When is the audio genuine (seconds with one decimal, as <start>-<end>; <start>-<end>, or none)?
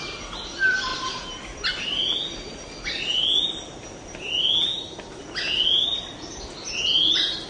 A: 0.0-7.5